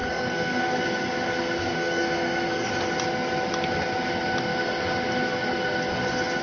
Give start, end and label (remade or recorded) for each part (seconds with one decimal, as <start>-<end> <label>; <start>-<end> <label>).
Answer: 0.0-0.8 remade; 0.8-1.6 recorded; 1.6-2.7 remade; 2.7-6.4 recorded